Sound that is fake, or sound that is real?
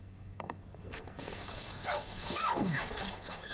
fake